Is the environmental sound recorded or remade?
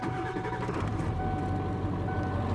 recorded